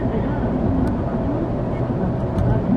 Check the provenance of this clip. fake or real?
real